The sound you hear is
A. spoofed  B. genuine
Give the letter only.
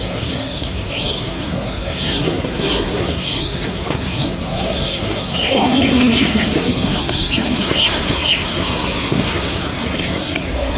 A